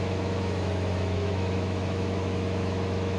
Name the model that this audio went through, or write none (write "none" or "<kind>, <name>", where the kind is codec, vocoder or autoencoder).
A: autoencoder, DAC-VAE